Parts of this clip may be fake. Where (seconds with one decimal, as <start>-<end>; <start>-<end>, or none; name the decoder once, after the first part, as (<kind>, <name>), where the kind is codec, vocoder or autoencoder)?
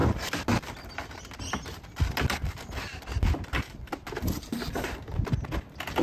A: none